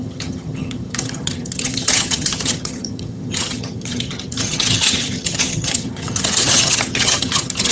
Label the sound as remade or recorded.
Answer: remade